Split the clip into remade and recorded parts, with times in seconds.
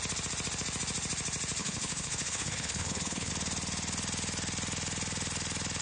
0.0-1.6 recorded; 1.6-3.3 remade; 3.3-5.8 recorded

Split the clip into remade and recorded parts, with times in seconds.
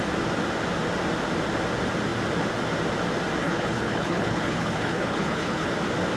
0.0-3.4 recorded; 3.4-5.7 remade; 5.7-6.2 recorded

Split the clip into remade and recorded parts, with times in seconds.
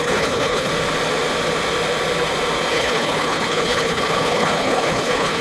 0.0-0.7 remade; 0.7-2.7 recorded; 2.7-5.4 remade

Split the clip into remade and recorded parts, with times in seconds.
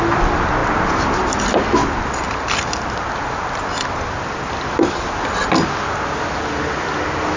0.0-7.4 recorded